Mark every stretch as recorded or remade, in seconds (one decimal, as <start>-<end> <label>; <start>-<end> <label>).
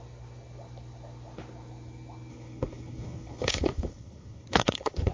0.0-2.3 recorded; 2.3-5.1 remade